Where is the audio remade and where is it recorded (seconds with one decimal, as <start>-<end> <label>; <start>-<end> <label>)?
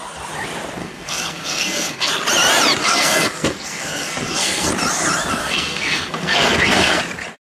0.0-0.8 recorded; 0.8-2.1 remade; 2.1-2.8 recorded; 2.8-4.7 remade; 4.7-5.4 recorded; 5.4-7.0 remade; 7.0-7.5 recorded